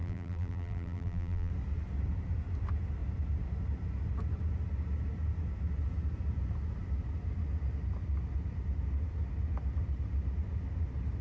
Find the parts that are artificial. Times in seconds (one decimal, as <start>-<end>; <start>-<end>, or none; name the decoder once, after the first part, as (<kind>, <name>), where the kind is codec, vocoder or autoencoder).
0.0-1.5 (vocoder, BigVGAN v2)